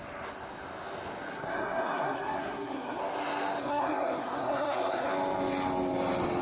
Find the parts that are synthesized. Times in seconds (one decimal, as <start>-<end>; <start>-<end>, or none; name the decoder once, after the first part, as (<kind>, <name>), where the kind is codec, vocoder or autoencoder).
1.3-3.0 (codec, SNAC); 3.6-5.1